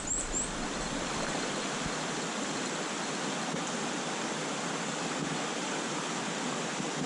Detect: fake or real real